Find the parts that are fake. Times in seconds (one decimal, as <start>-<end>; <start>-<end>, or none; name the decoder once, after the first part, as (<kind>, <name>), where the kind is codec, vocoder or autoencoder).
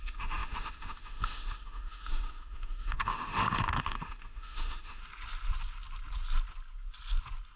0.0-5.0 (autoencoder, DAC-VAE)